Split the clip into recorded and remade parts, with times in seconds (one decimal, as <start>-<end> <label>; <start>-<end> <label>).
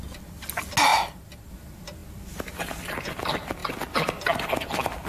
0.0-5.1 recorded